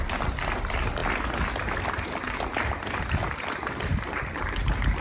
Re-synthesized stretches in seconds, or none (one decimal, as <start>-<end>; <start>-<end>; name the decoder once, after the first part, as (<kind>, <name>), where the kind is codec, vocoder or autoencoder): 0.0-1.0 (vocoder, BigVGAN v2); 3.0-5.0